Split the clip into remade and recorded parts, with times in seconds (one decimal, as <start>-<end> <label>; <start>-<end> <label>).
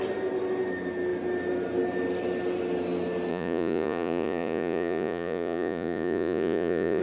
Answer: 0.0-3.3 recorded; 3.3-7.0 remade